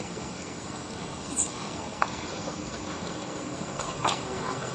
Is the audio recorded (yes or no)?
no